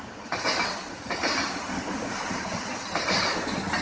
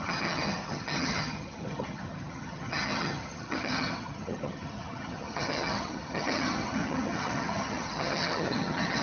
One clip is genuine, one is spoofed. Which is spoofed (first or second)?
second